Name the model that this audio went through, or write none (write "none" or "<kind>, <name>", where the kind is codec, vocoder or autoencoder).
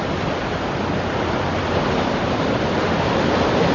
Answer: none